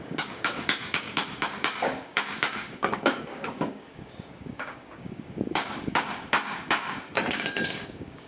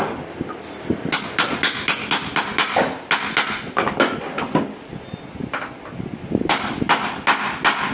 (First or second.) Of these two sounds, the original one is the second